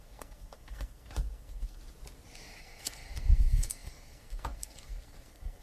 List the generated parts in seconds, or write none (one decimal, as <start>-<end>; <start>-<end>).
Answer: 0.0-1.8; 2.6-5.6